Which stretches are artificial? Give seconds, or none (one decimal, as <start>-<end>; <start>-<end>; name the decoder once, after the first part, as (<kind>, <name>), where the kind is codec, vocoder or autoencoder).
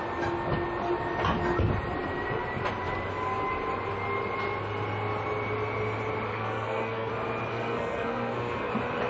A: 6.3-7.1 (codec, SNAC); 7.5-8.7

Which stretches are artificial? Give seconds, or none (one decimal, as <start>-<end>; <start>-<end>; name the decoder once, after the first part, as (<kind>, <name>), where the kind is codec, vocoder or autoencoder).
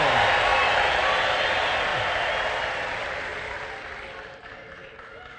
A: none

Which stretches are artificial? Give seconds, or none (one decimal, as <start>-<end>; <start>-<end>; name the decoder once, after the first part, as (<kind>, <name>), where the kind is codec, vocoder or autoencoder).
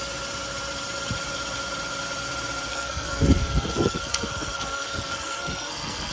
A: 2.7-6.1 (codec, SNAC)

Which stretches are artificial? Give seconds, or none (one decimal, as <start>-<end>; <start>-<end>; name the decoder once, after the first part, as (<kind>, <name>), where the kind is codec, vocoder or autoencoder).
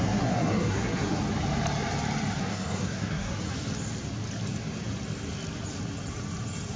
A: 0.0-1.2 (codec, SNAC); 2.4-3.5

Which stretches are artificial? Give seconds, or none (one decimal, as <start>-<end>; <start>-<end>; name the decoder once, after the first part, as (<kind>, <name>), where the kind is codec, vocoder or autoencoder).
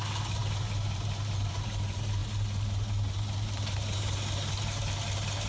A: none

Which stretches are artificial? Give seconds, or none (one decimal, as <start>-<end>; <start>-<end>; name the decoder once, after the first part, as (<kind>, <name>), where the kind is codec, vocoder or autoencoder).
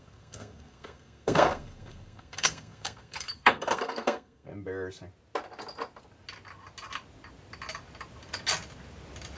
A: 0.0-4.5 (codec, SNAC)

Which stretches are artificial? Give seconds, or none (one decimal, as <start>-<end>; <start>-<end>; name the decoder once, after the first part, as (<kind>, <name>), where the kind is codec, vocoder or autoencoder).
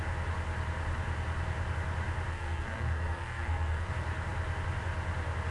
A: 2.3-3.9 (codec, SNAC)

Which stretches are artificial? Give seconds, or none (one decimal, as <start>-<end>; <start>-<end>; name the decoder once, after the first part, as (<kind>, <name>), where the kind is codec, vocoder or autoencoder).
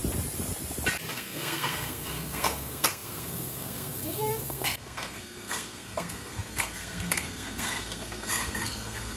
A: 1.1-9.2 (codec, SNAC)